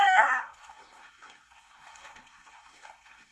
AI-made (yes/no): yes